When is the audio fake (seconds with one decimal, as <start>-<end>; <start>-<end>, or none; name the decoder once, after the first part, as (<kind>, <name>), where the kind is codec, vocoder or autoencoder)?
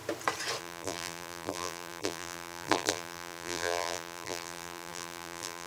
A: 0.6-5.7 (vocoder, BigVGAN v2)